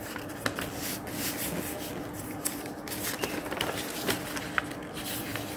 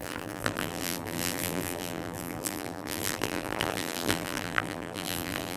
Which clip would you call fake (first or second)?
second